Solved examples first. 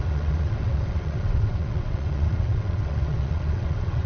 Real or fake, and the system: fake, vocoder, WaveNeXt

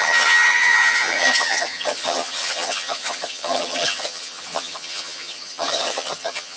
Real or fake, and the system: fake, vocoder, HiFi-GAN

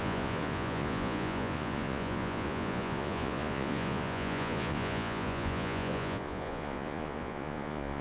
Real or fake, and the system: fake, vocoder, Vocos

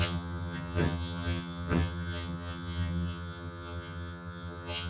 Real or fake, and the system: fake, vocoder, HiFi-GAN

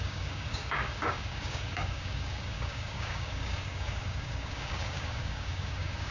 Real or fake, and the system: fake, codec, DAC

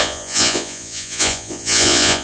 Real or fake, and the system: fake, vocoder, Vocos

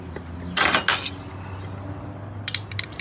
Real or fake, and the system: real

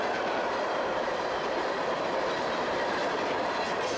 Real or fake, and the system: real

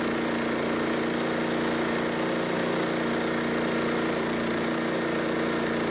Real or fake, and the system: real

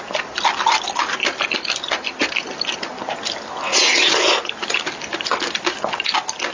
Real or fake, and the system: real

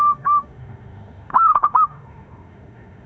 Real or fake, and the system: fake, autoencoder, DAC-VAE